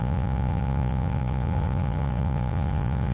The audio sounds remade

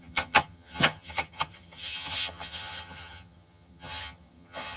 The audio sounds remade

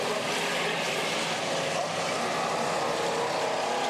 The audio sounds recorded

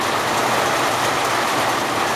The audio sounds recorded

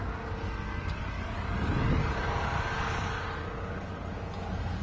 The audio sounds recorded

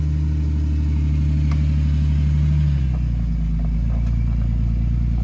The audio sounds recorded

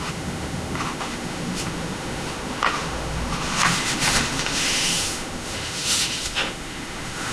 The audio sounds remade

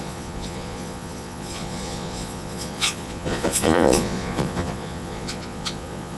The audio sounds remade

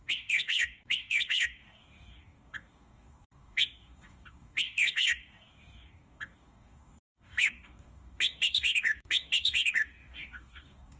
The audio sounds remade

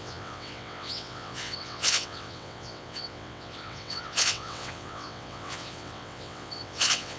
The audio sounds remade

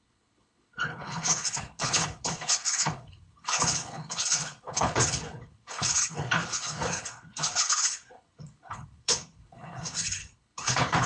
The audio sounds remade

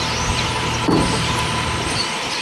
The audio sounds recorded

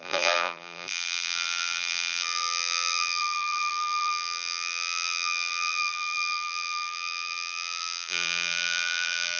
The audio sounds remade